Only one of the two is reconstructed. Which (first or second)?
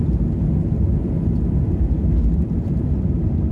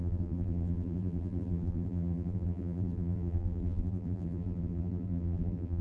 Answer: second